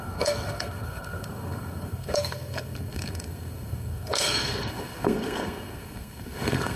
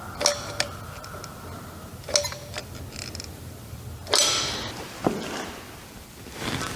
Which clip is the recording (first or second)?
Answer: second